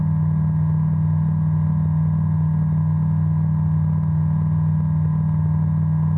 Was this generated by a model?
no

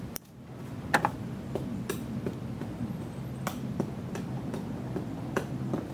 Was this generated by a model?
no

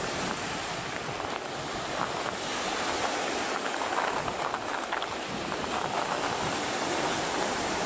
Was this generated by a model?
no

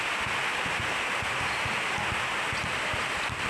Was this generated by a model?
no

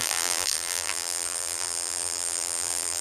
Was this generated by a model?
yes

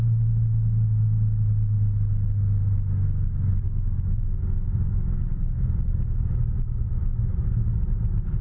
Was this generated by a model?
no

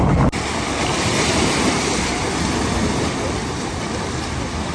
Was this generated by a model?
yes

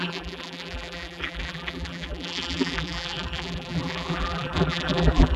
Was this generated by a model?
yes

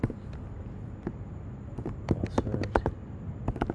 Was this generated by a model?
yes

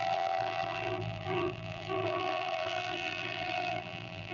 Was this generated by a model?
yes